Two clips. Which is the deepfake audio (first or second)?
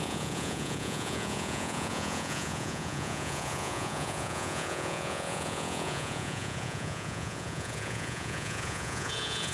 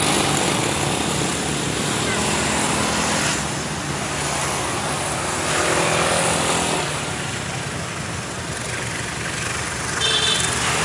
first